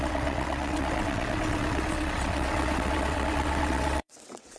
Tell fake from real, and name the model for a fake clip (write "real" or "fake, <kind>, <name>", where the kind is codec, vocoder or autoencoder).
fake, vocoder, WaveNeXt